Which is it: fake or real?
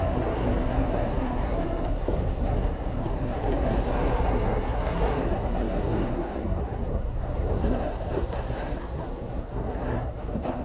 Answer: fake